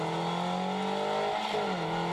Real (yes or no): yes